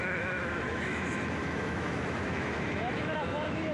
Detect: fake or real fake